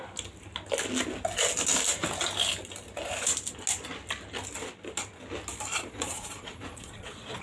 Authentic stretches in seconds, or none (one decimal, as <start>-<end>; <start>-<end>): 0.0-5.7